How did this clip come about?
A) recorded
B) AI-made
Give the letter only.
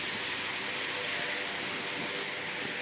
A